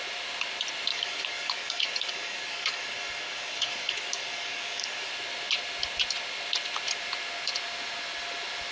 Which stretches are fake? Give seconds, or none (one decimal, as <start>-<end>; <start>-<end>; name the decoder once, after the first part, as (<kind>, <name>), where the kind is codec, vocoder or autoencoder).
0.9-5.1 (codec, DAC)